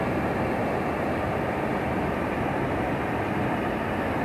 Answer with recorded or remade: recorded